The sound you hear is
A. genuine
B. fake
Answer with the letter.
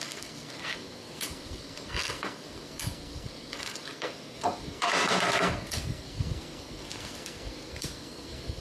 B